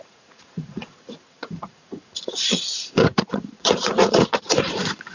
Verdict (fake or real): fake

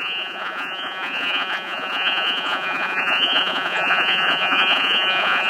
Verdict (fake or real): fake